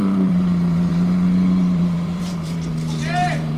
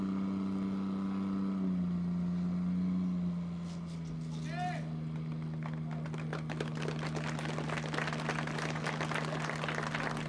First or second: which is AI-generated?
first